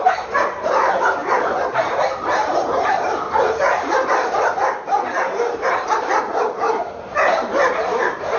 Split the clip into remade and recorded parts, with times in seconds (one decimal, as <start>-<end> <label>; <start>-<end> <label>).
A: 0.0-8.4 remade